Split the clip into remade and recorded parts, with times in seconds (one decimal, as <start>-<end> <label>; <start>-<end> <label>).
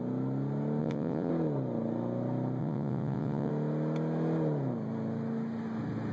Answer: 0.0-0.8 recorded; 0.8-1.3 remade; 1.3-2.6 recorded; 2.6-3.5 remade; 3.5-6.1 recorded